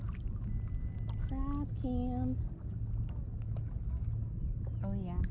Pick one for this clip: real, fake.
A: real